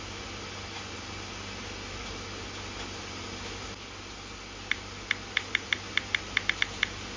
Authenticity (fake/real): real